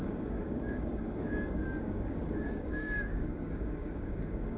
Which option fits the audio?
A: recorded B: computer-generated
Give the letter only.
B